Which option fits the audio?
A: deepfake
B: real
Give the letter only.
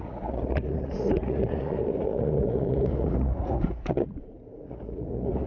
A